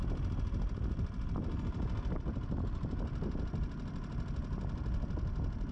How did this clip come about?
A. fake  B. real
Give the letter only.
B